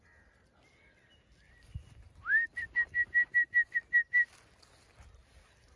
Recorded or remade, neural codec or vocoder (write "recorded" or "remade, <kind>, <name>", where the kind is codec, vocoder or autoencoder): recorded